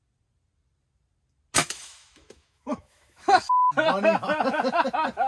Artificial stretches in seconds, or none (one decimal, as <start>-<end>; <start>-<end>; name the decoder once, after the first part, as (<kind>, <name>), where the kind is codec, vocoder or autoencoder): 1.6-3.7 (autoencoder, DAC-VAE)